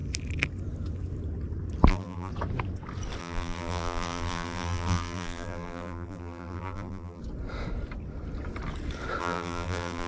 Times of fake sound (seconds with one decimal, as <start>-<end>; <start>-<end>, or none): 1.9-2.3; 3.2-7.2; 9.2-10.1